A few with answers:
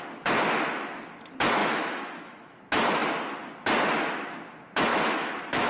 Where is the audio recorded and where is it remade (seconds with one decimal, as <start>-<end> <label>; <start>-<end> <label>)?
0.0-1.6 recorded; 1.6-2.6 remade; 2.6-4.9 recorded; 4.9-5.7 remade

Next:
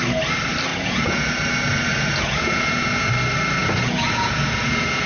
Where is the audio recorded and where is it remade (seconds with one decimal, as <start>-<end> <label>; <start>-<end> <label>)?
0.0-0.7 recorded; 0.7-1.3 remade; 1.3-1.9 recorded; 1.9-3.1 remade; 3.1-3.6 recorded; 3.6-5.1 remade

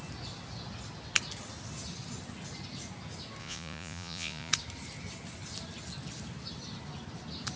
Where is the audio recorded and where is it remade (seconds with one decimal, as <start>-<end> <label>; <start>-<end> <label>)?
0.0-3.4 recorded; 3.4-4.5 remade; 4.5-7.6 recorded

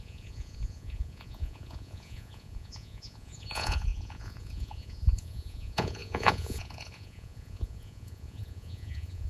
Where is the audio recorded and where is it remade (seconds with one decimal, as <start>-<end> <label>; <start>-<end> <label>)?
0.0-9.3 remade

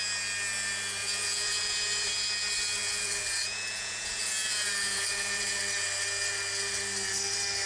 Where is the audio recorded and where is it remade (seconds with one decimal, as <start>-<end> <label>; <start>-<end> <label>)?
0.0-1.0 recorded; 1.0-2.1 remade; 2.1-2.8 recorded; 2.8-5.6 remade; 5.6-7.7 recorded

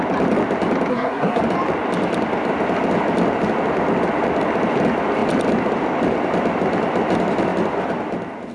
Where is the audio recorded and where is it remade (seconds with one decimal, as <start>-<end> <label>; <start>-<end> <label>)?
0.0-0.9 recorded; 0.9-1.4 remade; 1.4-8.5 recorded